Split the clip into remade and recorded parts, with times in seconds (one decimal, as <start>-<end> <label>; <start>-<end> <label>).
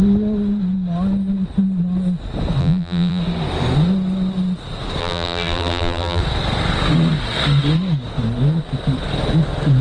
0.0-2.6 recorded; 2.6-3.2 remade; 3.2-5.0 recorded; 5.0-6.2 remade; 6.2-9.8 recorded